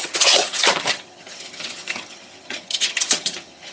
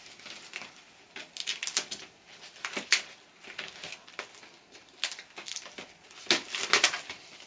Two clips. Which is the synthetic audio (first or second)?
first